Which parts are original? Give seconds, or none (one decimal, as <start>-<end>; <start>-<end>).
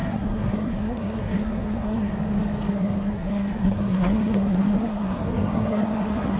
2.1-2.7